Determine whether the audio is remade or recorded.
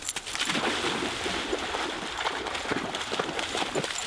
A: recorded